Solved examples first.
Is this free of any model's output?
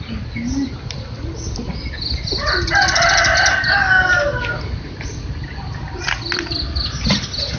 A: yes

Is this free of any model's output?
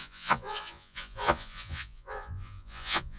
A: no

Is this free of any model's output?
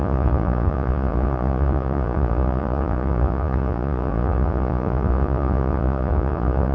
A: no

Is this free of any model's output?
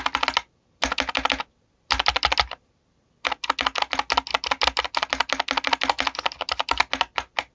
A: yes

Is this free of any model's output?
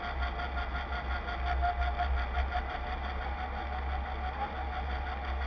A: yes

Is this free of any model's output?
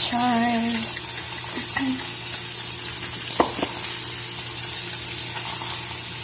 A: yes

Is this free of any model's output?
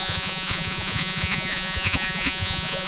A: no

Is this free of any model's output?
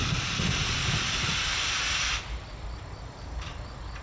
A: yes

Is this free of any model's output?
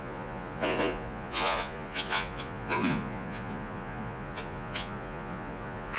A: no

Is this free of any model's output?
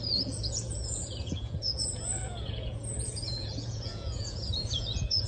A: no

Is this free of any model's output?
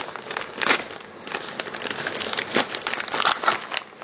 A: yes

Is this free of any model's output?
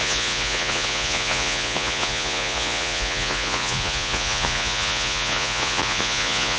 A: no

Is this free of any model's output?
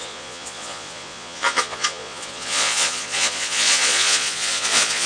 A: no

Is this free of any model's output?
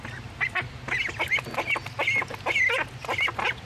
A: yes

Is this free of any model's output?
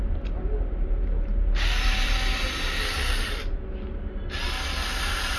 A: yes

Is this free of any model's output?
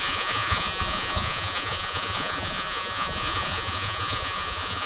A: no